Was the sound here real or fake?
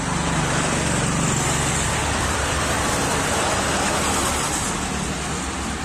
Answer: real